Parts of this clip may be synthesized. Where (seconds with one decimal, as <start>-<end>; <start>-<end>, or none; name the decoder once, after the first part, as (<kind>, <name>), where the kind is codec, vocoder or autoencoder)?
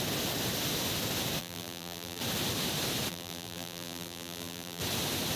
1.4-2.2 (vocoder, BigVGAN v2); 3.1-4.8